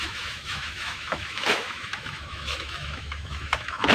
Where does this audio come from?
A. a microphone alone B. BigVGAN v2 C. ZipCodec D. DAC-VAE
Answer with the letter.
D